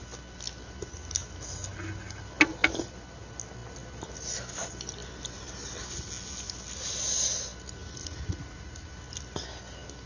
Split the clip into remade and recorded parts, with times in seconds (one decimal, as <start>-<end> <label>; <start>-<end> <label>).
0.0-8.0 recorded; 8.0-8.9 remade; 8.9-10.1 recorded